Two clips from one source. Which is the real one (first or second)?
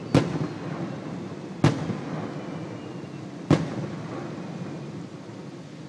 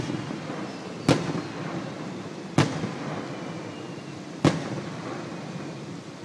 first